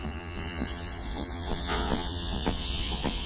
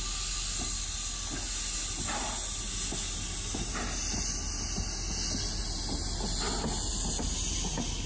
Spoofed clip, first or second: first